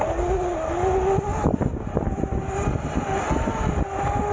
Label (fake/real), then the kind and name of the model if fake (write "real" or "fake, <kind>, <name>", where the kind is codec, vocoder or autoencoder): real